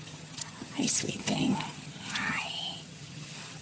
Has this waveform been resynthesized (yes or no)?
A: yes